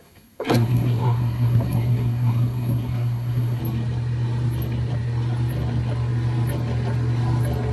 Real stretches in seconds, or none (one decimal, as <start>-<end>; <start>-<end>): 3.6-7.7

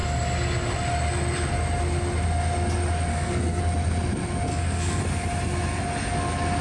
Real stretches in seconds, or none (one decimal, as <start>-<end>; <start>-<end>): 0.0-3.1; 3.6-4.5; 5.0-6.6